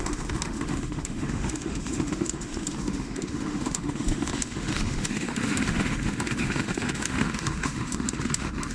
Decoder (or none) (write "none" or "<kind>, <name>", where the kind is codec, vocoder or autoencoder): autoencoder, DAC-VAE